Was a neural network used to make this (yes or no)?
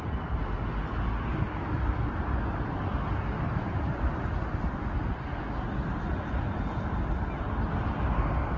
no